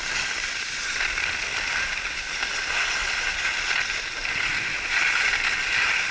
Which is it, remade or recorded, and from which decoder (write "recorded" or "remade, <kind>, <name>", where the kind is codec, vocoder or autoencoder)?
recorded